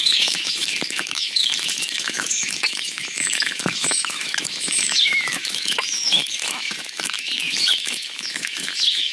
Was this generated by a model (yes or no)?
yes